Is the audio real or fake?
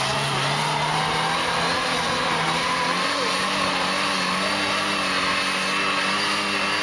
real